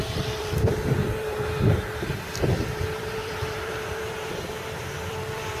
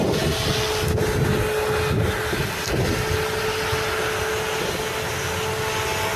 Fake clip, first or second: first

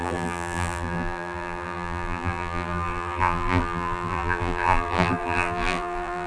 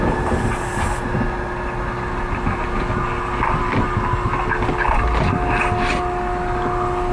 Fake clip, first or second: first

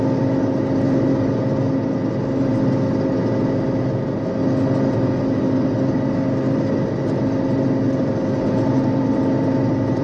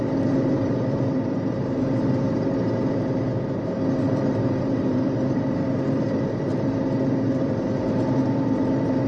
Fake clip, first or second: second